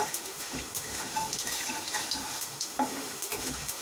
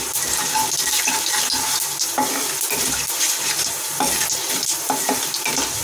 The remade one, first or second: first